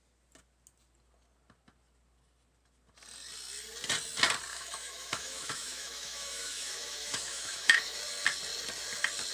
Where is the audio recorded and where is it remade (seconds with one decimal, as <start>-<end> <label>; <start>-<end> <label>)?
0.0-4.5 recorded; 4.5-8.0 remade; 8.0-9.3 recorded